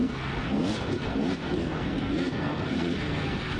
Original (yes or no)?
no